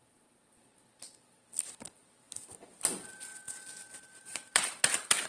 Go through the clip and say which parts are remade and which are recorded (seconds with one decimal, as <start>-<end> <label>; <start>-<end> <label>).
0.0-0.4 remade; 0.4-2.9 recorded; 2.9-3.3 remade; 3.3-4.2 recorded; 4.2-5.3 remade